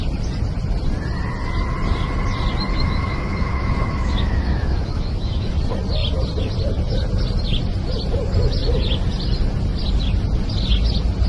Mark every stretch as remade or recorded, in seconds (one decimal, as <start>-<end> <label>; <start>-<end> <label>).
0.0-2.7 recorded; 2.7-5.5 remade; 5.5-11.3 recorded